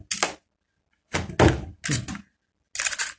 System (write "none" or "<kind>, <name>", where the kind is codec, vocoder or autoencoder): none